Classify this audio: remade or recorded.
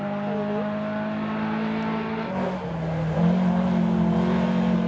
recorded